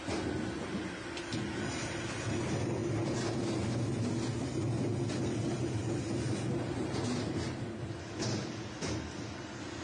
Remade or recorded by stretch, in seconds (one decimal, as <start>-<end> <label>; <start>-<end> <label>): 0.0-9.8 recorded